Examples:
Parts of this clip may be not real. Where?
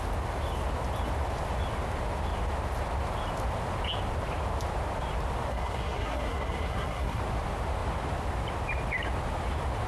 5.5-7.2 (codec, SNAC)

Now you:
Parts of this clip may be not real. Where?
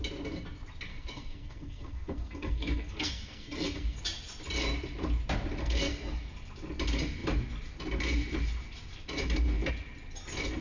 0.9-4.0 (codec, SNAC); 5.6-6.1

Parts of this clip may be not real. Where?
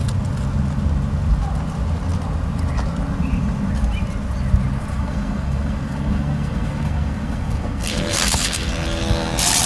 4.9-8.7 (codec, SNAC)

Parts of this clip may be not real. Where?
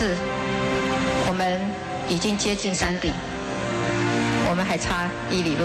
2.6-4.4 (codec, SNAC)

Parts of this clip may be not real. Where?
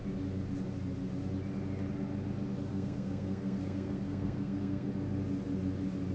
2.7-4.9 (codec, SNAC)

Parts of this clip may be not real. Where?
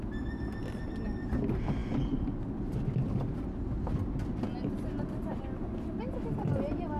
none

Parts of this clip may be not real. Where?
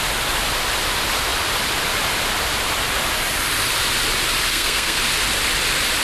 4.5-5.0 (codec, SNAC)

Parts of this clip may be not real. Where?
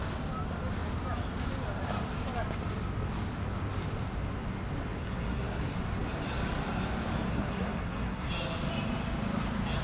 5.0-5.6 (codec, SNAC); 7.3-8.3